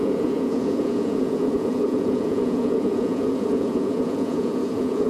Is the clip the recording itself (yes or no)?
no